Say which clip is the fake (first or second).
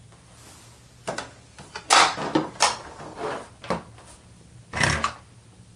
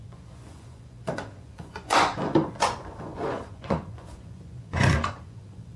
second